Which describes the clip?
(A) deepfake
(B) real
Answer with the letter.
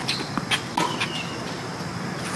B